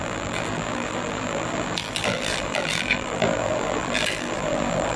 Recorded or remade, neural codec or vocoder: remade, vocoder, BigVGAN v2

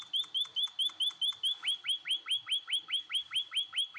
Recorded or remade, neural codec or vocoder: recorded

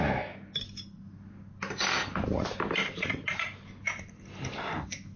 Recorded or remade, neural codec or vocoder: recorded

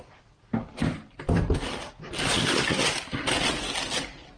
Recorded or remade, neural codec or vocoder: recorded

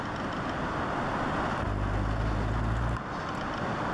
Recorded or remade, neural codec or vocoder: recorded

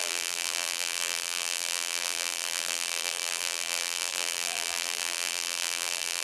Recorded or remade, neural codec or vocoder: remade, vocoder, BigVGAN v2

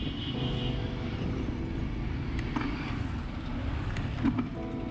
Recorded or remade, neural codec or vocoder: recorded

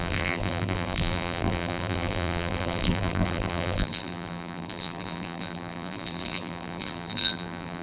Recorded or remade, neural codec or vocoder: remade, vocoder, BigVGAN v2